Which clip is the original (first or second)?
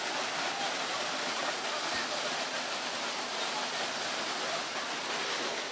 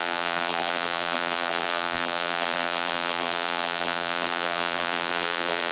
first